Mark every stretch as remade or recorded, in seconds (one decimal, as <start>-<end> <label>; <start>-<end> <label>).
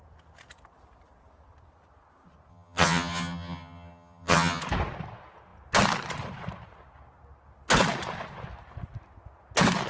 0.0-2.5 recorded; 2.5-4.6 remade; 4.6-9.9 recorded